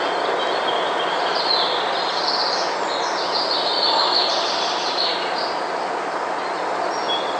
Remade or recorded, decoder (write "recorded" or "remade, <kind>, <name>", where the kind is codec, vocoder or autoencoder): recorded